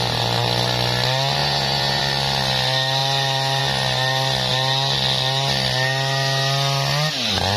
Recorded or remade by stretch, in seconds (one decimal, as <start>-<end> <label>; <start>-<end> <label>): 0.0-1.4 recorded; 1.4-2.0 remade; 2.0-7.6 recorded